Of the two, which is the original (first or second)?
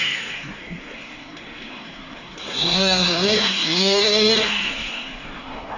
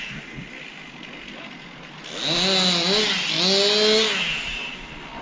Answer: second